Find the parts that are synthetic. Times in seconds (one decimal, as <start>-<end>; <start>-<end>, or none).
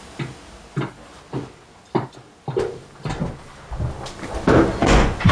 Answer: 4.7-5.3